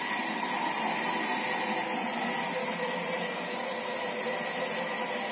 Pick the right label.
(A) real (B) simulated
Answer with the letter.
A